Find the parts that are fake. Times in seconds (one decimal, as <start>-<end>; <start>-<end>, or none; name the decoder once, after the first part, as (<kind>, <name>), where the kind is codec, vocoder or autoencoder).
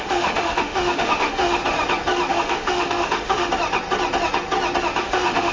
0.0-1.6 (autoencoder, DAC-VAE); 2.3-3.5; 5.0-5.5